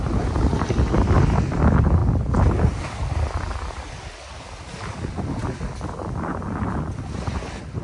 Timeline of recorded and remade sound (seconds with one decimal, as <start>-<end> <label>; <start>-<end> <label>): 0.0-7.8 recorded